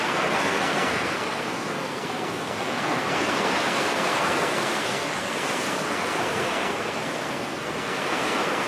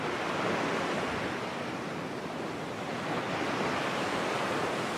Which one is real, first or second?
second